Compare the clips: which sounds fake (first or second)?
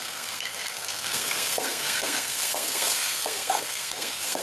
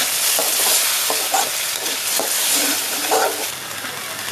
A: first